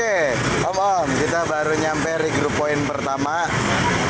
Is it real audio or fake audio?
real